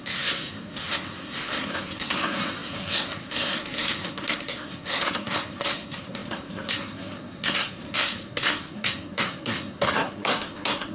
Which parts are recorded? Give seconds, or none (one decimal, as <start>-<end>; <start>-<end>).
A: none